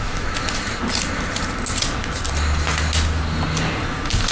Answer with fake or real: real